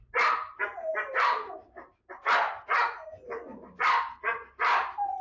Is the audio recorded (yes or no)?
yes